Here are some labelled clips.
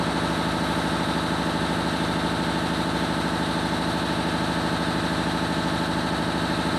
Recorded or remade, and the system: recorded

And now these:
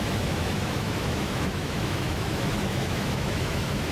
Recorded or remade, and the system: remade, autoencoder, DAC-VAE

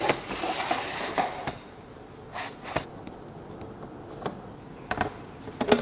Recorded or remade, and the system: recorded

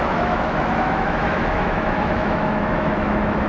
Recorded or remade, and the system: remade, autoencoder, DAC-VAE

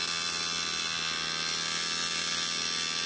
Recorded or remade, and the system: recorded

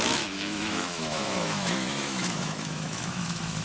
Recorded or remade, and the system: remade, autoencoder, DAC-VAE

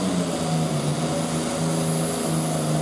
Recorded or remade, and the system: recorded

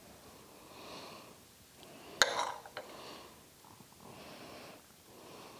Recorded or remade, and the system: recorded